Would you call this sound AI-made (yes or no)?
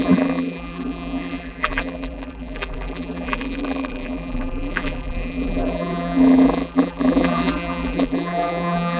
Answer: yes